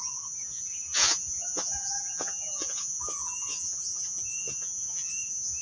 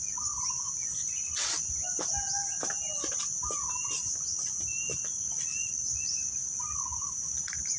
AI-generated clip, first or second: first